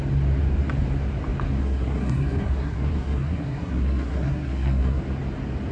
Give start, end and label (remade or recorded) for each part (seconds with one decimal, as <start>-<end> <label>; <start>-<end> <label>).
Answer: 0.0-1.6 recorded; 1.6-5.0 remade; 5.0-5.7 recorded